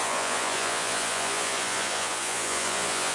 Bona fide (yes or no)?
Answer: no